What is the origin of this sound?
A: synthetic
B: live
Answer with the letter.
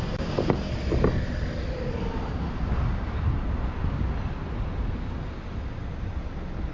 B